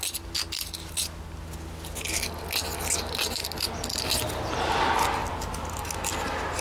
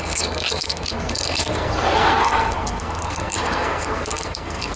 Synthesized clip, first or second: second